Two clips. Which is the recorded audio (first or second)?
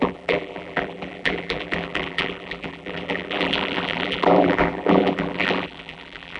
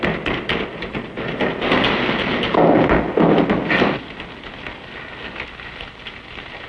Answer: second